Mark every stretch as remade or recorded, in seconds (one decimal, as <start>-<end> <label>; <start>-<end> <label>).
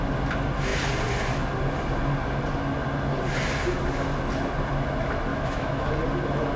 0.0-5.3 recorded; 5.3-5.9 remade; 5.9-6.6 recorded